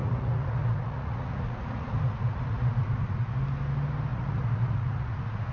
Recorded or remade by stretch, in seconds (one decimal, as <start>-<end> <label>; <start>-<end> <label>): 0.0-3.3 remade; 3.3-4.1 recorded; 4.1-5.5 remade